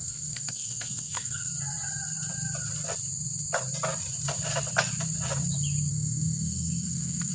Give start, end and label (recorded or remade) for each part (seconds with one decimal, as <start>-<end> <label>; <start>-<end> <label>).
0.0-1.5 remade; 1.5-5.9 recorded; 5.9-7.3 remade

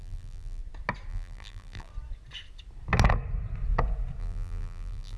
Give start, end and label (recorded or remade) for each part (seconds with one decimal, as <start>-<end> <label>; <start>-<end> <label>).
0.0-0.6 remade; 0.6-1.1 recorded; 1.1-1.9 remade; 1.9-4.2 recorded; 4.2-5.2 remade

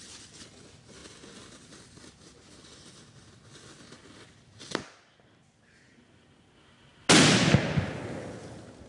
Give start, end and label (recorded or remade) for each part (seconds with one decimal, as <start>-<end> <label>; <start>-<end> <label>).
0.0-8.9 recorded

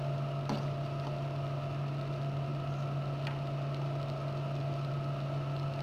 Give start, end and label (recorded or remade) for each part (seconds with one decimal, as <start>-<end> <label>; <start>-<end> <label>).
0.0-5.8 recorded